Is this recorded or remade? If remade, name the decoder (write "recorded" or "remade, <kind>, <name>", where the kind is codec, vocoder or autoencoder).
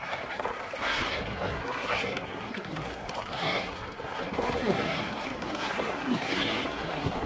remade, codec, SNAC